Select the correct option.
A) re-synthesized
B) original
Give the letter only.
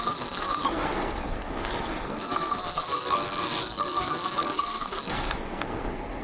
A